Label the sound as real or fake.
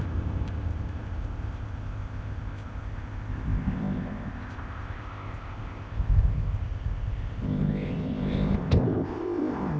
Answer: fake